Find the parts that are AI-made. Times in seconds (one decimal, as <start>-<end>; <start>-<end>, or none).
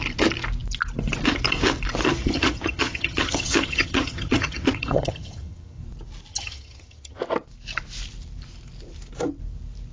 2.0-5.8; 6.3-7.2